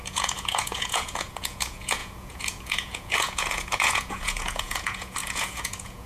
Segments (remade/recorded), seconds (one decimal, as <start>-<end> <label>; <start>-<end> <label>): 0.0-6.1 remade